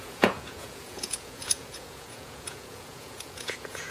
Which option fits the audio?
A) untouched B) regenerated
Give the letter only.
B